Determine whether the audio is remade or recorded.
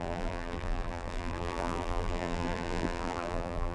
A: remade